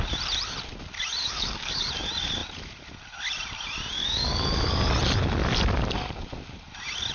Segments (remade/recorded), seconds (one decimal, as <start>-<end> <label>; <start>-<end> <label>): 0.0-1.2 recorded; 1.2-1.9 remade; 1.9-4.0 recorded; 4.0-4.8 remade; 4.8-7.1 recorded